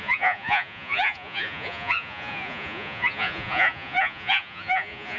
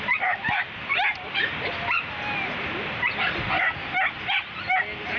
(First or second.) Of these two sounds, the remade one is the first